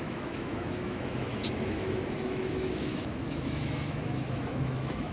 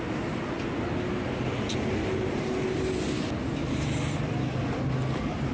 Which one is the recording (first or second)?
second